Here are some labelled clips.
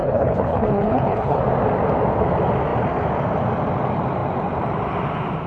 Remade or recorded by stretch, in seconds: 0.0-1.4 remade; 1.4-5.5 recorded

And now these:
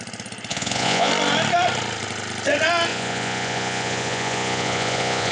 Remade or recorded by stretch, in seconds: 0.0-0.5 recorded; 0.5-1.1 remade; 1.1-2.9 recorded; 2.9-5.3 remade

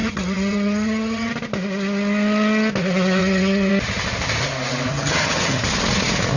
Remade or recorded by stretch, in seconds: 0.0-1.3 remade; 1.3-3.2 recorded; 3.2-3.7 remade; 3.7-4.9 recorded; 4.9-5.6 remade; 5.6-6.4 recorded